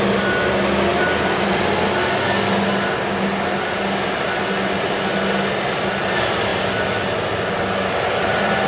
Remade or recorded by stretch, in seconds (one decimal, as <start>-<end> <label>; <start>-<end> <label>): 0.0-8.7 recorded